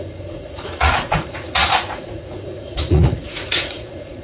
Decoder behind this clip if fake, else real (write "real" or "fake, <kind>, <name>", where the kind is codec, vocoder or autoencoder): fake, vocoder, Vocos